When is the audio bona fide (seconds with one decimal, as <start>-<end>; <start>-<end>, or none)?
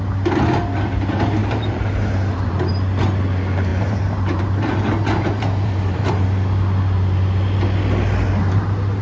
0.0-1.4; 2.5-3.7; 6.1-9.0